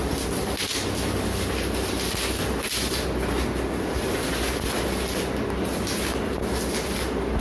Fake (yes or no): no